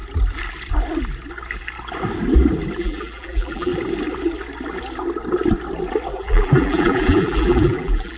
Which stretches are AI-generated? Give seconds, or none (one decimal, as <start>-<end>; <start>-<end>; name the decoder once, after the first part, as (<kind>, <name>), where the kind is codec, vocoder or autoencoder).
2.8-3.7 (vocoder, BigVGAN v2); 6.1-8.2

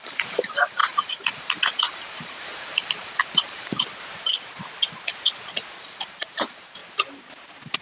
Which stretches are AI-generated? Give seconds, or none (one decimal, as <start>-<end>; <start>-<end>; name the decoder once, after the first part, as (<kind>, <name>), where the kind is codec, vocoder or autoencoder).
0.0-3.7 (vocoder, BigVGAN v2); 5.8-6.8

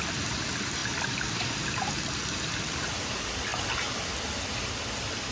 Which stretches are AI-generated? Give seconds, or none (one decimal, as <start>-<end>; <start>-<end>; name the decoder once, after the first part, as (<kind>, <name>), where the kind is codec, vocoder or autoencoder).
0.0-3.5 (vocoder, BigVGAN v2)

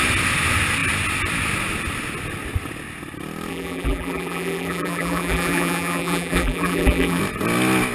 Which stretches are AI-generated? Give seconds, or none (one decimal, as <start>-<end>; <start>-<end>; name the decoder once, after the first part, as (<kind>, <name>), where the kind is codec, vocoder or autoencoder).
3.5-7.2 (vocoder, BigVGAN v2)

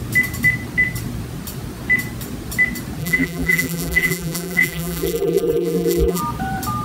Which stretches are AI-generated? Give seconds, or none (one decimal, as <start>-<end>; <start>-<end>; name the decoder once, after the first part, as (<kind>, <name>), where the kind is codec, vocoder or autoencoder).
3.0-6.2 (vocoder, BigVGAN v2)